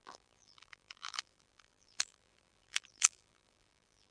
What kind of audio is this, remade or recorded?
remade